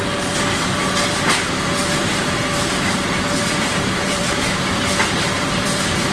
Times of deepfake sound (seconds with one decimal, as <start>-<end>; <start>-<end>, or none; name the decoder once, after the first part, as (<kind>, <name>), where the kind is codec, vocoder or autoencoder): 2.0-6.1 (vocoder, BigVGAN v2)